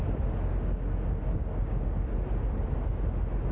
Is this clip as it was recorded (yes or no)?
yes